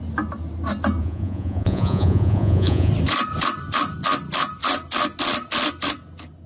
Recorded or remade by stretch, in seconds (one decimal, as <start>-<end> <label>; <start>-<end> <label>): 0.0-1.0 recorded; 1.0-2.9 remade; 2.9-6.5 recorded